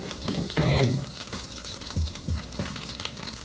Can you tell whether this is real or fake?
fake